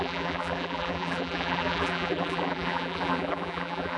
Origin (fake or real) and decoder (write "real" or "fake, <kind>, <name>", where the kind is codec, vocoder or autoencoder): fake, vocoder, BigVGAN v2